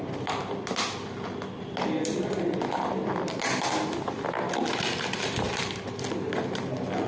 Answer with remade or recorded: recorded